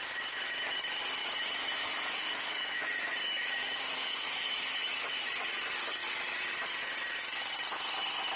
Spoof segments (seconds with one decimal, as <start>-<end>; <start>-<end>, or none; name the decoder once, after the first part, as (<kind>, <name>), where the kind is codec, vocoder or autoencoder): 1.2-5.3 (autoencoder, DAC-VAE)